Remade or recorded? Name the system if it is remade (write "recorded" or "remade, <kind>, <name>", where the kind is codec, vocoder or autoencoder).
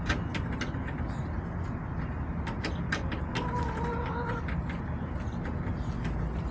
recorded